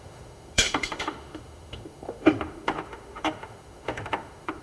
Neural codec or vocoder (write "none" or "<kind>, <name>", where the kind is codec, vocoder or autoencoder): autoencoder, DAC-VAE